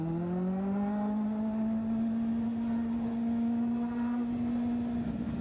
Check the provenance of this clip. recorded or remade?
recorded